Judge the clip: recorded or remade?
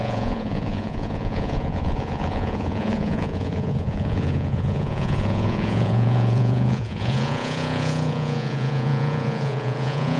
remade